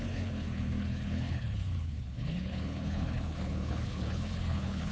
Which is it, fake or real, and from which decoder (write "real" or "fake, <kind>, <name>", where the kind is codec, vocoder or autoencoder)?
fake, codec, HILCodec